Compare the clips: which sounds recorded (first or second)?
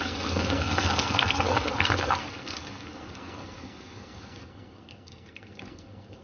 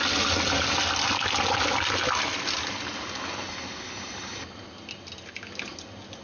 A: second